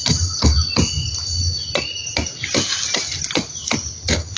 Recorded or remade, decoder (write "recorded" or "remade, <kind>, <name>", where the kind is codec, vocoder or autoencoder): recorded